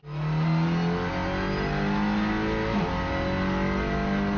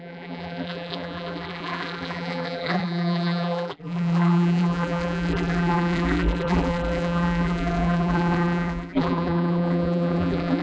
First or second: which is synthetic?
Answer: second